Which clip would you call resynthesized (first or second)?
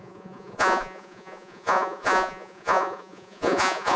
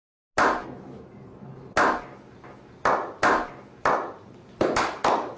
first